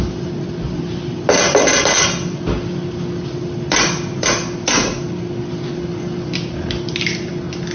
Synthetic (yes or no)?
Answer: no